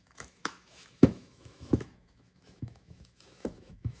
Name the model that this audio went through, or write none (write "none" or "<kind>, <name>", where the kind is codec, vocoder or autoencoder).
autoencoder, DAC-VAE